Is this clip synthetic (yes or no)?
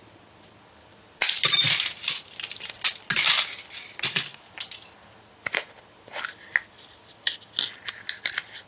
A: no